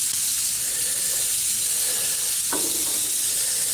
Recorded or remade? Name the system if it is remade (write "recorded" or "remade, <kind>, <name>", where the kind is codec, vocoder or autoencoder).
recorded